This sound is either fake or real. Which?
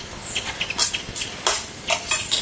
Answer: real